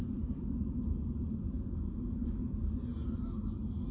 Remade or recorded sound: recorded